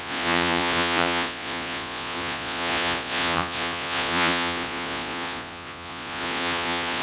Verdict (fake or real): fake